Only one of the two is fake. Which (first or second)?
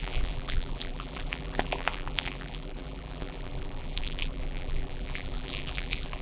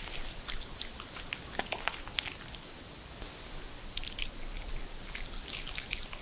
first